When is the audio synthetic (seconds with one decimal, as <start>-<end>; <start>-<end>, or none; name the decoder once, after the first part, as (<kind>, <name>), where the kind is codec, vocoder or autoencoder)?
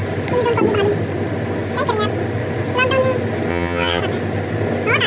3.5-4.0 (vocoder, HiFi-GAN)